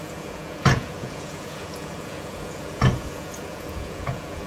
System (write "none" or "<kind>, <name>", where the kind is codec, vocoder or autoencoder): vocoder, Vocos